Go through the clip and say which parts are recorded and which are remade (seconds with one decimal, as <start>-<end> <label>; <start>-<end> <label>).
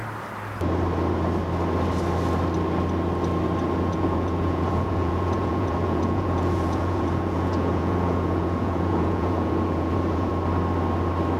0.0-3.9 recorded; 3.9-10.3 remade; 10.3-11.4 recorded